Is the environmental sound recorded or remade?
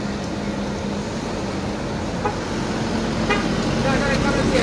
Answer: recorded